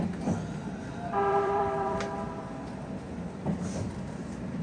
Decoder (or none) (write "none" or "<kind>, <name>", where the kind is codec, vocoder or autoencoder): vocoder, BigVGAN v2